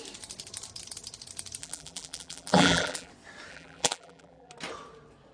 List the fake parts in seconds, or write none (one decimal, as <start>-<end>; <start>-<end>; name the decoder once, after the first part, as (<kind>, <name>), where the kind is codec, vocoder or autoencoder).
1.6-3.1 (vocoder, BigVGAN v2); 3.5-4.5